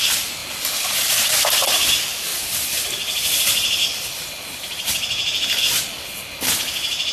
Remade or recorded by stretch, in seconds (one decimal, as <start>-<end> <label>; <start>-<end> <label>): 0.0-2.3 recorded; 2.3-5.6 remade; 5.6-7.1 recorded